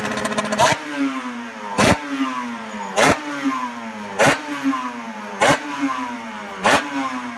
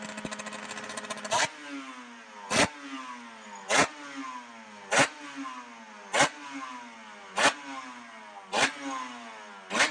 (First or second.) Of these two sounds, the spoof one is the first